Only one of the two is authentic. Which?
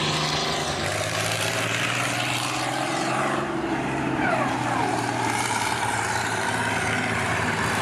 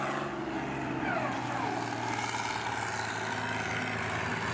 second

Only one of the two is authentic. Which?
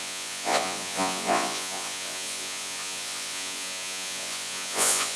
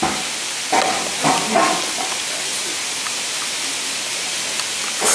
second